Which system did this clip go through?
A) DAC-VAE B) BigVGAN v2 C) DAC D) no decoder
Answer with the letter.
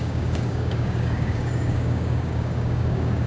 C